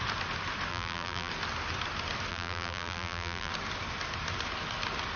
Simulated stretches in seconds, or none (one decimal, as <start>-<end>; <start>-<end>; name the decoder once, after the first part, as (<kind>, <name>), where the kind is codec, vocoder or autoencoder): 0.7-1.3 (vocoder, BigVGAN v2); 2.3-3.5